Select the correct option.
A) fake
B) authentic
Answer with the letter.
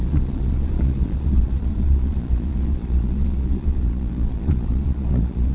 A